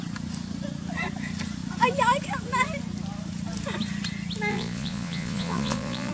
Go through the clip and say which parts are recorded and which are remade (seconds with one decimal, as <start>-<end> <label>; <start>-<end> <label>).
0.0-4.5 recorded; 4.5-6.1 remade